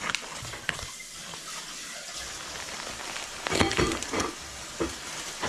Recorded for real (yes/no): yes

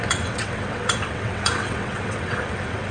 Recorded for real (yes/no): no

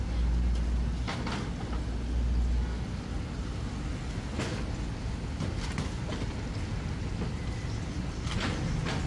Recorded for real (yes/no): yes